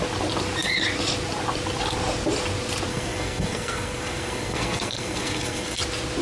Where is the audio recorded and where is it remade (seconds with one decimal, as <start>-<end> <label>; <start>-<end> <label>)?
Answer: 0.0-2.9 recorded; 2.9-5.8 remade; 5.8-6.2 recorded